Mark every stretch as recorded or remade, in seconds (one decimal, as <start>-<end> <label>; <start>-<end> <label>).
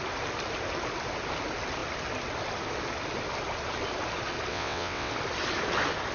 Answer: 0.0-4.5 recorded; 4.5-5.1 remade; 5.1-6.1 recorded